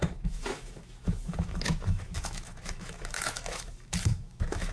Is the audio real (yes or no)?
no